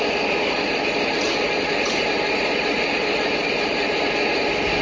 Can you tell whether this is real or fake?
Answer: real